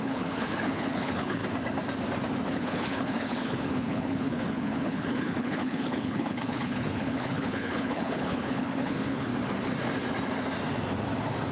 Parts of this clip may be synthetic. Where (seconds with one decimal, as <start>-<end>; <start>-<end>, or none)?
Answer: 0.0-1.4; 2.5-9.3